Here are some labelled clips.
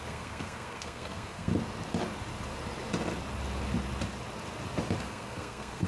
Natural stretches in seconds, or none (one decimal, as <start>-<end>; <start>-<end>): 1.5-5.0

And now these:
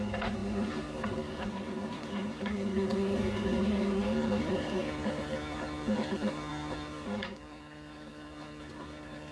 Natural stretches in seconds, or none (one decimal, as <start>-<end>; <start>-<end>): none

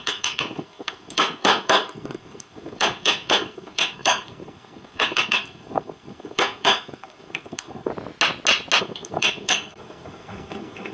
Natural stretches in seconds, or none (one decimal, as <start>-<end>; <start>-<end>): 7.9-8.8

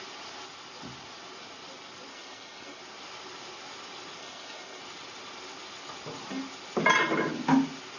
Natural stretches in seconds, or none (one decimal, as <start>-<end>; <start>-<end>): 0.0-2.1; 2.8-4.2; 4.8-8.0

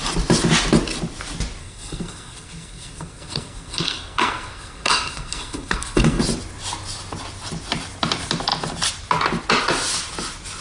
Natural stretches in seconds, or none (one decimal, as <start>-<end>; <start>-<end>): 0.0-1.6; 6.2-10.6

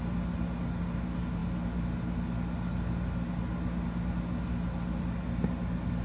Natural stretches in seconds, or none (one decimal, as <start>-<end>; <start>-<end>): 0.0-6.0

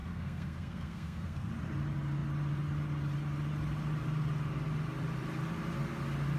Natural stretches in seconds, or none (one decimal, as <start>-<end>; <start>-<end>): 1.5-6.4